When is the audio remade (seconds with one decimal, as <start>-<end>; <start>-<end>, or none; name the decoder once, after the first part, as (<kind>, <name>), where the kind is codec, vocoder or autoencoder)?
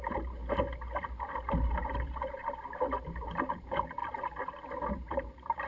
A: 0.0-0.4 (vocoder, BigVGAN v2); 1.5-2.4; 3.5-4.0; 4.9-5.7